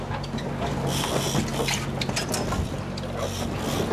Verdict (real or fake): real